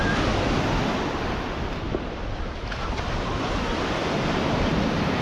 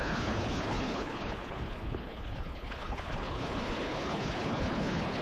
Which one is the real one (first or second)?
first